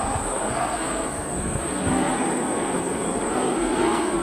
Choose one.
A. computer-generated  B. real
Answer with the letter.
A